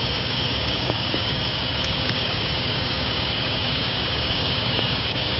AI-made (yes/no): yes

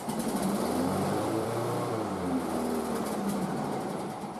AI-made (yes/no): yes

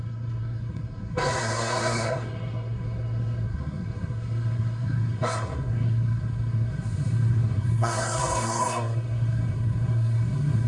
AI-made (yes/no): yes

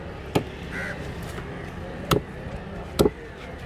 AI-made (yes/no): no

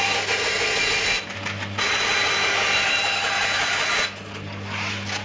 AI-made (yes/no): no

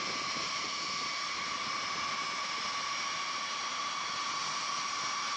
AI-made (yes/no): no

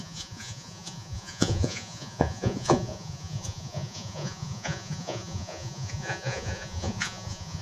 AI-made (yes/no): yes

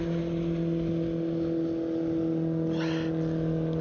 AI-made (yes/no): no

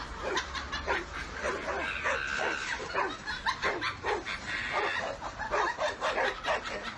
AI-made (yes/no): no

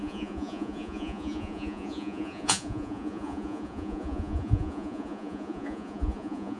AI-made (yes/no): yes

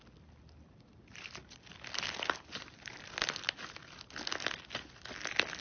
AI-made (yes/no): no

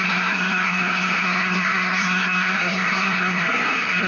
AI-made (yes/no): yes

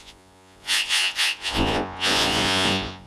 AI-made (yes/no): yes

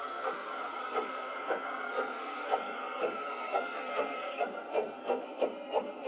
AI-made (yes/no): yes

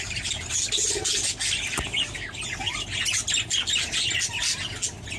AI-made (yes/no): no